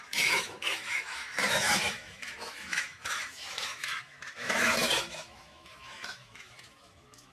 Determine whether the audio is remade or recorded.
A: remade